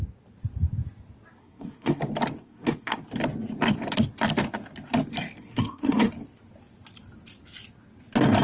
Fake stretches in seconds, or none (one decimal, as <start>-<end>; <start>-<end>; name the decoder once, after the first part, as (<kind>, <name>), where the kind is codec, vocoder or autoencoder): 1.4-2.0 (codec, SNAC); 2.4-3.0; 5.4-6.1